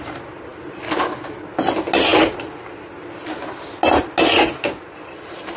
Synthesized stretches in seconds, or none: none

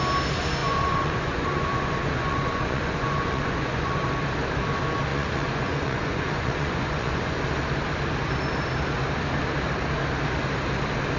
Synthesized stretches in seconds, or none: 0.6-4.1 (vocoder, Vocos); 5.1-7.4

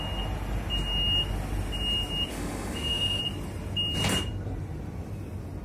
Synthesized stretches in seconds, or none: 2.3-3.2 (autoencoder, DAC-VAE)

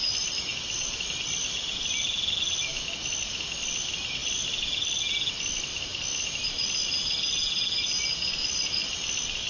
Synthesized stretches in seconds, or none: none

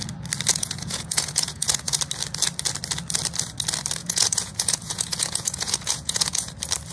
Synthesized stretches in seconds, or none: 0.5-2.0 (vocoder, Vocos); 4.0-6.5